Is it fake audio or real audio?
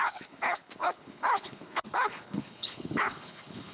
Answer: fake